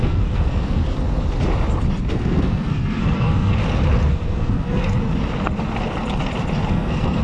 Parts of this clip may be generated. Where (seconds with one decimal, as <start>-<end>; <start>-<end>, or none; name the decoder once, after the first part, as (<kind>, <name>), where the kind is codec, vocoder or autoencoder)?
0.0-0.8 (codec, SNAC); 2.1-3.6; 4.1-4.8; 6.7-7.2